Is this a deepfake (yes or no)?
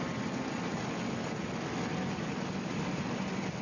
no